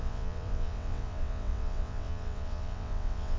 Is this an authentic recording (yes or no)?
no